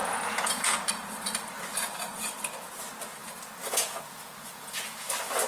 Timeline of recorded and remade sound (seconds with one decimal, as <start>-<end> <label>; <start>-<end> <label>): 0.0-0.9 remade; 0.9-3.2 recorded; 3.2-5.1 remade; 5.1-5.5 recorded